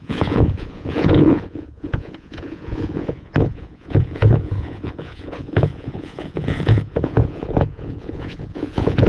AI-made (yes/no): yes